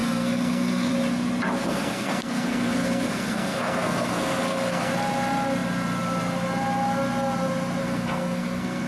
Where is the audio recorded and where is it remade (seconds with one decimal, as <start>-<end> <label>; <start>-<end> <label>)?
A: 0.0-0.9 remade; 0.9-1.6 recorded; 1.6-4.9 remade; 4.9-7.8 recorded; 7.8-8.9 remade